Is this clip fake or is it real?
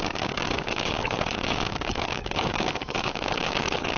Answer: fake